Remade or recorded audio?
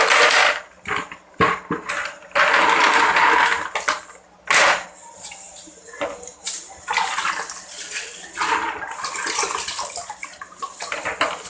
recorded